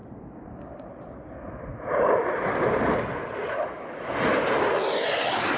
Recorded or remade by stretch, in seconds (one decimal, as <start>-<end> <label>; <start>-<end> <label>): 0.0-1.3 remade; 1.3-2.5 recorded; 2.5-3.3 remade; 3.3-5.6 recorded